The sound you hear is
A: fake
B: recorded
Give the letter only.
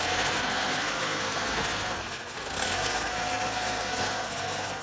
A